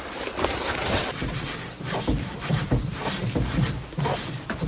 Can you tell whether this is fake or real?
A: fake